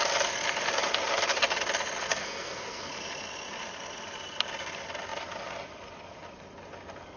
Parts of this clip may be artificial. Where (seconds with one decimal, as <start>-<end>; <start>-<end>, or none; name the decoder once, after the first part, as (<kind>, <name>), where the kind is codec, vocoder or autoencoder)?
2.1-2.9 (codec, SNAC)